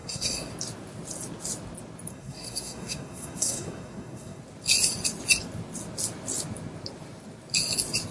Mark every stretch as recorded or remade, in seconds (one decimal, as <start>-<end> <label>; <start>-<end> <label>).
0.0-0.5 remade; 0.5-2.1 recorded; 2.1-4.4 remade; 4.4-8.1 recorded